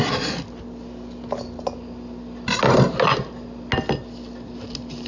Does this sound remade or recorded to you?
recorded